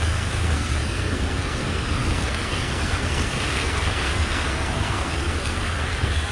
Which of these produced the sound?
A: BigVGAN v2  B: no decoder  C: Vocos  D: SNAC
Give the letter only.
D